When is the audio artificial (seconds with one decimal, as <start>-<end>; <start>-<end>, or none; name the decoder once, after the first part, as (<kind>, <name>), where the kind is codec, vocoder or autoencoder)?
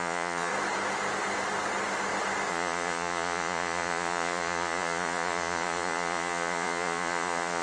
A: 0.0-0.5 (vocoder, Vocos); 2.5-7.6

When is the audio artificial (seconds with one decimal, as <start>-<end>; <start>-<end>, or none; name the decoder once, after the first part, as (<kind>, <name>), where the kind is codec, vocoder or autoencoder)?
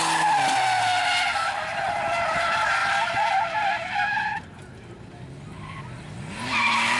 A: none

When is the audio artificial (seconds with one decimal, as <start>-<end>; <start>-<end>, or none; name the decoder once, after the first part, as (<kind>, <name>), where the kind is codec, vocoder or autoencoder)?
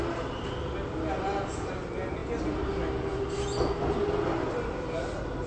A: none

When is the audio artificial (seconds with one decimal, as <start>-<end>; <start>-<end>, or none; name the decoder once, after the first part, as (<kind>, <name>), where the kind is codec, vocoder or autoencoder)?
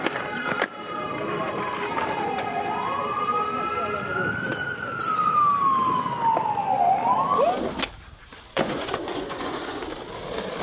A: 8.3-9.8 (vocoder, Vocos)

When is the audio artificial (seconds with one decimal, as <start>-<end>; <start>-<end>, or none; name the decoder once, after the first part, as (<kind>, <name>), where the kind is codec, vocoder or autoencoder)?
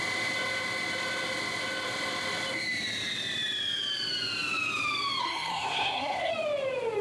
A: 5.2-6.3 (codec, SNAC)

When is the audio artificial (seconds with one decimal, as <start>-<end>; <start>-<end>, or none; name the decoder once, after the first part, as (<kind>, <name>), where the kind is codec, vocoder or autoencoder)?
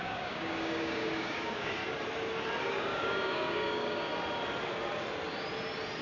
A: 0.0-1.8 (codec, DAC); 2.6-4.1